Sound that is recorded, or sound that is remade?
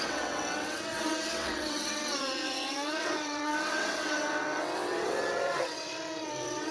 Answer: remade